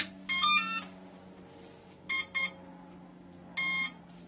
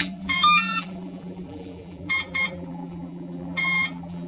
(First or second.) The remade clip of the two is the second